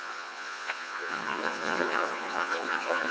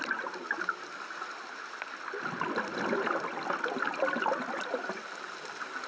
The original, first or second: second